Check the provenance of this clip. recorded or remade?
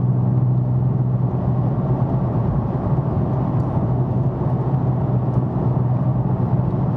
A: recorded